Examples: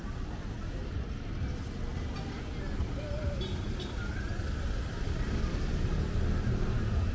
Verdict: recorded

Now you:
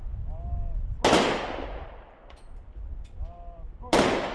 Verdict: recorded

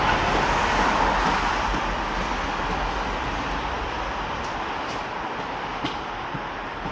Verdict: recorded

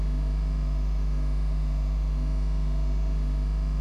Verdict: remade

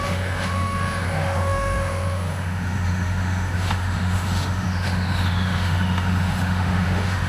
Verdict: remade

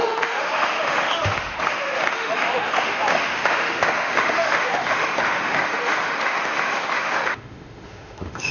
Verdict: remade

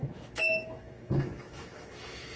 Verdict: remade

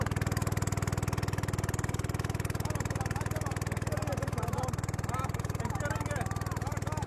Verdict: recorded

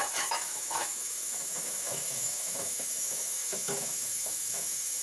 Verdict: remade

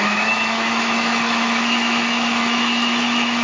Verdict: remade